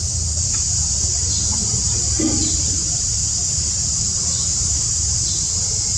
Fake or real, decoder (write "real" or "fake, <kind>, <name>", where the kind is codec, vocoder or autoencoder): fake, vocoder, BigVGAN v2